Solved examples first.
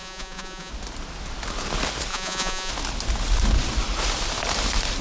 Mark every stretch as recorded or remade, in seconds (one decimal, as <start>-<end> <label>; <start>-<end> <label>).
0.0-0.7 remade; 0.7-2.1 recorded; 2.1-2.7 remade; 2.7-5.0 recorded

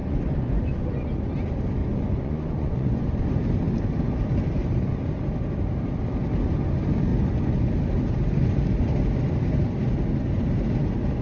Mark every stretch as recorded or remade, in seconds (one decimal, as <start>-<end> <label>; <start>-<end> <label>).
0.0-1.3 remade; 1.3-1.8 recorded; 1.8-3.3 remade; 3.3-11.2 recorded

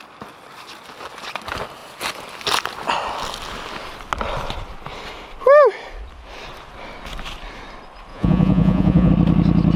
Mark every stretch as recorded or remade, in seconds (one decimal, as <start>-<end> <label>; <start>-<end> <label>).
0.0-8.1 recorded; 8.1-9.1 remade; 9.1-9.8 recorded

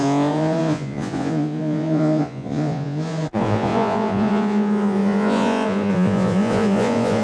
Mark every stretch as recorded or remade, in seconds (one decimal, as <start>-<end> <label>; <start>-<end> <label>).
0.0-7.2 remade

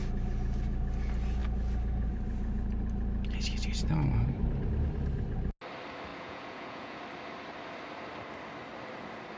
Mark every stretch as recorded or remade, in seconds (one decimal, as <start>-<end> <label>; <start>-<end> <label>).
0.0-6.1 recorded; 6.1-7.0 remade; 7.0-9.4 recorded

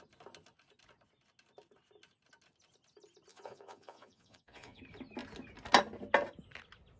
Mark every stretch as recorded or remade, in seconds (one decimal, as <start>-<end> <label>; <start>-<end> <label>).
0.0-3.3 recorded; 3.3-4.8 remade; 4.8-7.0 recorded